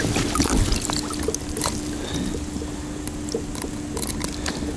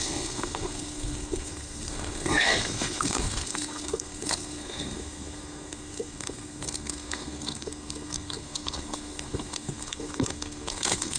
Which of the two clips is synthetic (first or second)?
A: second